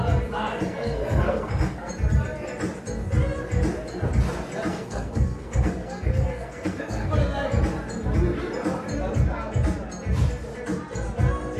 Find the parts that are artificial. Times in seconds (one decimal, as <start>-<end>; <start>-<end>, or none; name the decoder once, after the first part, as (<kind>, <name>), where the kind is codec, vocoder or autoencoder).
0.5-1.9 (codec, SNAC); 4.7-7.1